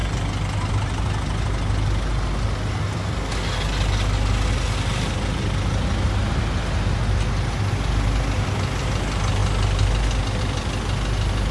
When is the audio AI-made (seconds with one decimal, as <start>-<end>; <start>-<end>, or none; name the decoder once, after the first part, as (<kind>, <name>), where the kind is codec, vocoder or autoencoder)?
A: none